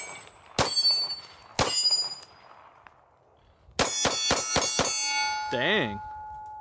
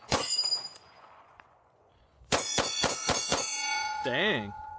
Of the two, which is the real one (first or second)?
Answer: first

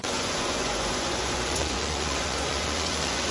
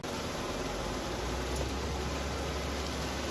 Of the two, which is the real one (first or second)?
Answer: second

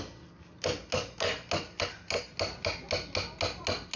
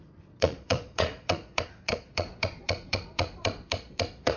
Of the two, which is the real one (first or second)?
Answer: first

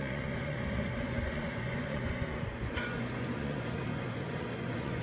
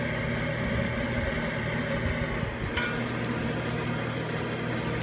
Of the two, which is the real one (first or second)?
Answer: second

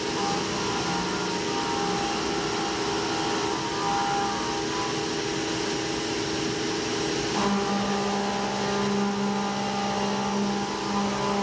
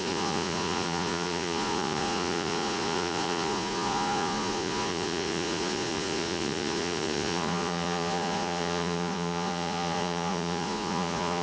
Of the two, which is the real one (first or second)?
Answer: first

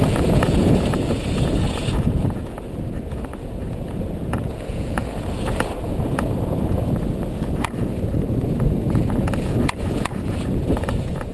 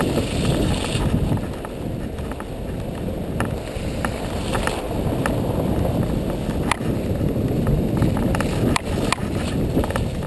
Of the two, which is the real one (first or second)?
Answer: second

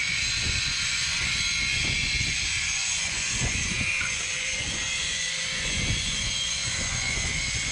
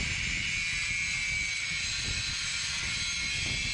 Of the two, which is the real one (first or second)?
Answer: second